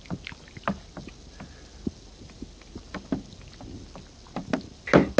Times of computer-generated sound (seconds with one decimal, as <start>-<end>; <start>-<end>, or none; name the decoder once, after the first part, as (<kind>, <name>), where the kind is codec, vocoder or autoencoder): none